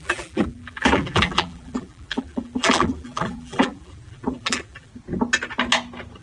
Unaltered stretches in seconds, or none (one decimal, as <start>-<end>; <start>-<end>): 4.9-6.2